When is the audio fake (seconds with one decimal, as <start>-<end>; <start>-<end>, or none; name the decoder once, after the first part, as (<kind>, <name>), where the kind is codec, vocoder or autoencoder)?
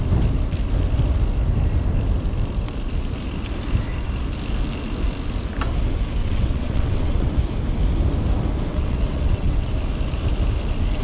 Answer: 6.2-7.3 (vocoder, WaveNeXt); 8.7-9.7